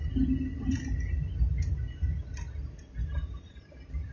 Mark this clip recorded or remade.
recorded